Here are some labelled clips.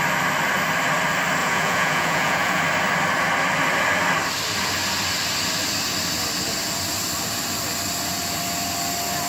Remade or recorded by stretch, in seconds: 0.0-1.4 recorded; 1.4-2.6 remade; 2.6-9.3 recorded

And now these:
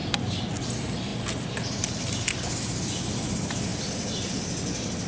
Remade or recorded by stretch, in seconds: 0.0-5.1 recorded

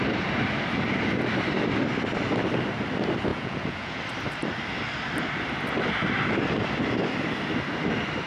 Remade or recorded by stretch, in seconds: 0.0-3.3 recorded; 3.3-4.0 remade; 4.0-8.3 recorded

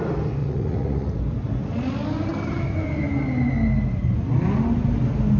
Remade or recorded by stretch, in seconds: 0.0-0.4 recorded; 0.4-1.2 remade; 1.2-5.4 recorded

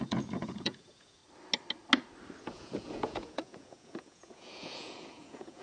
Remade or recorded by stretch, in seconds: 0.0-1.2 remade; 1.2-2.4 recorded; 2.4-5.6 remade

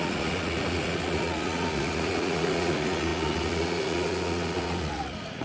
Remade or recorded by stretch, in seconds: 0.0-5.4 remade

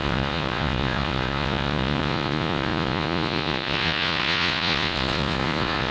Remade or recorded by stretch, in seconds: 0.0-5.9 remade